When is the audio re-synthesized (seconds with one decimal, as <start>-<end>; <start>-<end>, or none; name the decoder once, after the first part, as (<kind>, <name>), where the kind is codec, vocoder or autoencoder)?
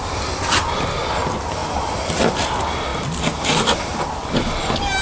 none